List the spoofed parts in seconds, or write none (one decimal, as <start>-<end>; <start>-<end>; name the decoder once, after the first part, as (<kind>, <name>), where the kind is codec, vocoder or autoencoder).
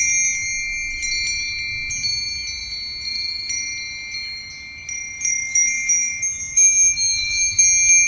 5.3-7.6 (autoencoder, DAC-VAE)